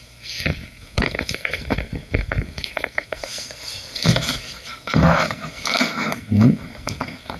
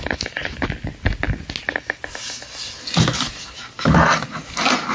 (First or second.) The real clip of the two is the second